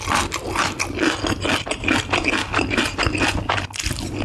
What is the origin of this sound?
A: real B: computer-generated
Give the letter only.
A